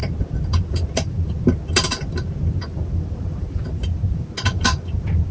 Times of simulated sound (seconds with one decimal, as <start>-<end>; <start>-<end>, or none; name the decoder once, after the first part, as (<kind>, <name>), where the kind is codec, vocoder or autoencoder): none